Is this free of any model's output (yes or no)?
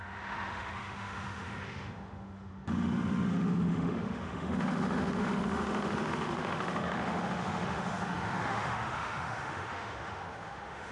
no